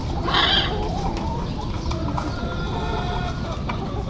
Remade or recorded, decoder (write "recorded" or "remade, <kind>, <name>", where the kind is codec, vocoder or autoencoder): recorded